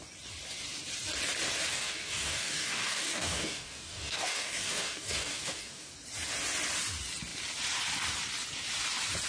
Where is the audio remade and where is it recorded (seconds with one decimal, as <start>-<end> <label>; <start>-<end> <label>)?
0.0-1.7 recorded; 1.7-5.9 remade; 5.9-9.3 recorded